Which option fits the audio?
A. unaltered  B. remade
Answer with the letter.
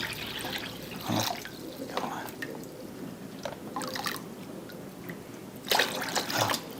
A